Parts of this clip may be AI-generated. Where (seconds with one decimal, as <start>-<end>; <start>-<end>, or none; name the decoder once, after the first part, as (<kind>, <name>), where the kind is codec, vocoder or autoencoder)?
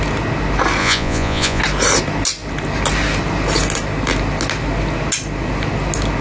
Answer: 0.8-1.6 (vocoder, Vocos)